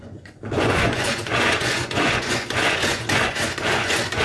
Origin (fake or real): fake